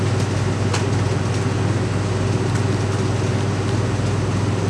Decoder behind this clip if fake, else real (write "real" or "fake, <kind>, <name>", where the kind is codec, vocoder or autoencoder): real